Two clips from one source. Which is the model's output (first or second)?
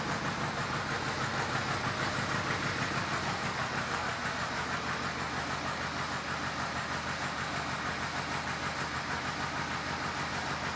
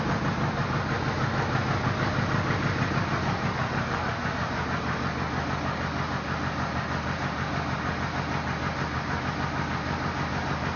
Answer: second